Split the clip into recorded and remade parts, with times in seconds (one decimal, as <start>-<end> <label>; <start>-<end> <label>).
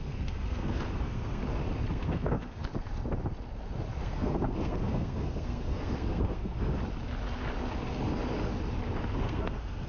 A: 0.0-1.4 remade; 1.4-1.9 recorded; 1.9-2.6 remade; 2.6-4.0 recorded; 4.0-6.8 remade; 6.8-9.2 recorded; 9.2-9.9 remade